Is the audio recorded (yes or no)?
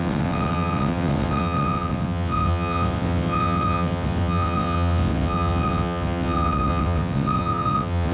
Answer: no